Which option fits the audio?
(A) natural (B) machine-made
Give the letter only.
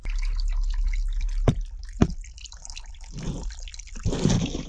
A